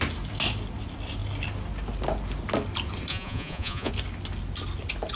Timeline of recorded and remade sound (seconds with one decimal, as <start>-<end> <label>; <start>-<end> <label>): 0.0-3.1 recorded; 3.1-3.9 remade; 3.9-5.2 recorded